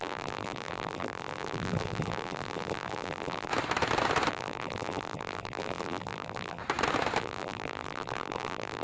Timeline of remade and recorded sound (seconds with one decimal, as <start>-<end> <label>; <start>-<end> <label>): 0.0-3.5 remade; 3.5-4.3 recorded; 4.3-6.6 remade; 6.6-7.2 recorded; 7.2-8.8 remade